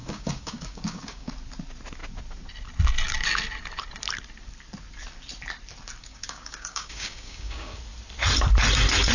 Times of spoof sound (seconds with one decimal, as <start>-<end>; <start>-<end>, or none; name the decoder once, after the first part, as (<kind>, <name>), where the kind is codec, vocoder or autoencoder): 0.0-1.3 (codec, DAC); 6.0-7.8